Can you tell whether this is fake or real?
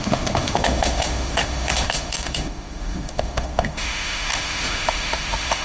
fake